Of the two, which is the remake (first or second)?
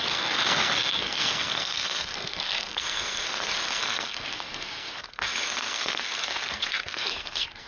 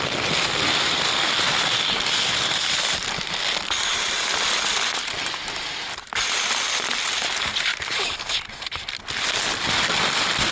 first